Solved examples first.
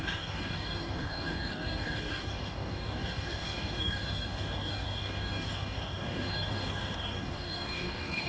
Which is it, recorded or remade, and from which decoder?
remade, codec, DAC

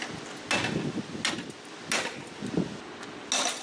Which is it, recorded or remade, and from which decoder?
recorded